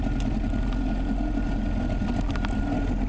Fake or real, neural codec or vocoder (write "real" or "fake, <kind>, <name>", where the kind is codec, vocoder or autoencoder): real